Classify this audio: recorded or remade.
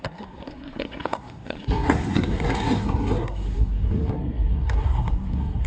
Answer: remade